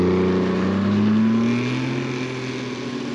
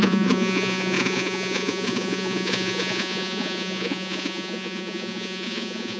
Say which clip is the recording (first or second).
first